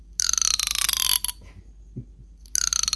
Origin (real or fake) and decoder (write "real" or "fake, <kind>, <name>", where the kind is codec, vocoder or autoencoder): real